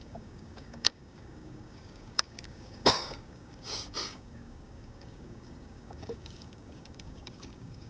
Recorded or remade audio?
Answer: remade